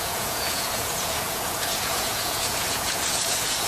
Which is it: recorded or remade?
remade